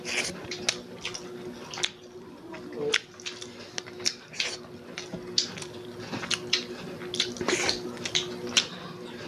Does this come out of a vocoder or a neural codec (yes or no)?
no